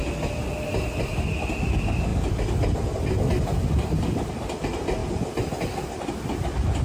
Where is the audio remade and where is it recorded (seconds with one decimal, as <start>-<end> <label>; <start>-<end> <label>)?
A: 0.0-6.8 recorded